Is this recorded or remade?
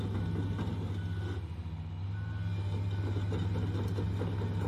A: recorded